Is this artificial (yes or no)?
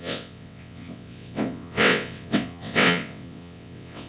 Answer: yes